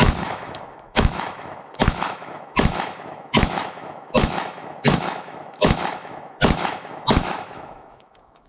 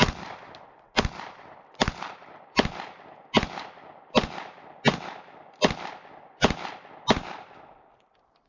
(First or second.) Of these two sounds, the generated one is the first